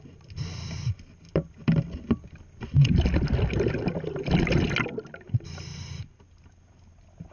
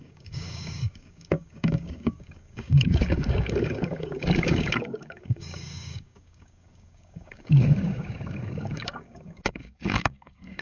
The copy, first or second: second